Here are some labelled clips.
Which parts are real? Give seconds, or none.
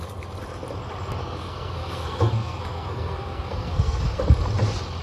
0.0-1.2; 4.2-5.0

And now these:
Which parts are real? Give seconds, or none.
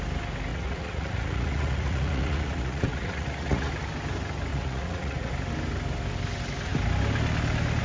0.0-0.5; 3.7-4.5; 5.3-7.8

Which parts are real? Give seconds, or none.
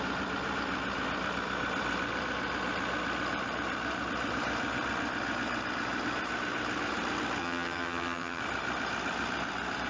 0.0-7.4; 8.4-9.9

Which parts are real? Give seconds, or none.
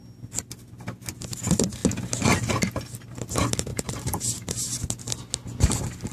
0.0-3.7; 4.2-6.1